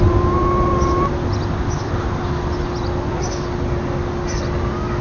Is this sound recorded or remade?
recorded